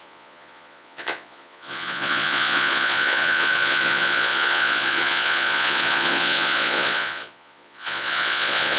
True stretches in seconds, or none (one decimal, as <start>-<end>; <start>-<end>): none